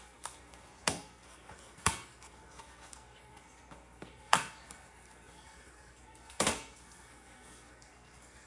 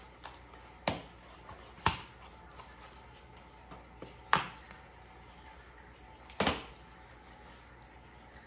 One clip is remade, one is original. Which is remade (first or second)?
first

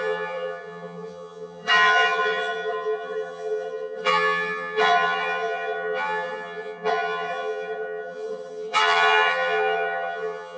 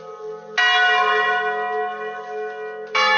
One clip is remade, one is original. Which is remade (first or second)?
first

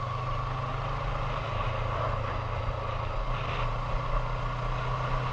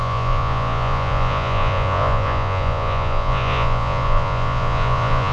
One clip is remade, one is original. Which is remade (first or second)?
second